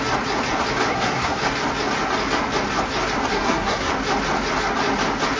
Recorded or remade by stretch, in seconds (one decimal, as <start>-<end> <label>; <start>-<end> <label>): 0.0-0.9 recorded; 0.9-1.4 remade; 1.4-3.3 recorded; 3.3-3.9 remade; 3.9-5.4 recorded